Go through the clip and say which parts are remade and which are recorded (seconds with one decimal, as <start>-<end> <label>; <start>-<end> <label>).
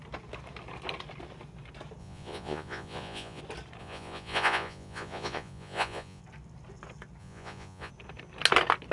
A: 0.0-2.0 recorded; 2.0-3.4 remade; 3.4-3.8 recorded; 3.8-6.2 remade; 6.2-7.2 recorded; 7.2-7.9 remade; 7.9-8.9 recorded